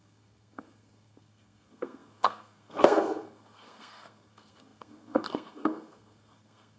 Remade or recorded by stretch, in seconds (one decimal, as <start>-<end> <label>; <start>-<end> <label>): 0.0-6.8 remade